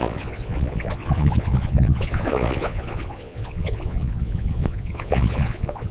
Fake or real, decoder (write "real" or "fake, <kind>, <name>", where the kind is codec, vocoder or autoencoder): fake, vocoder, Vocos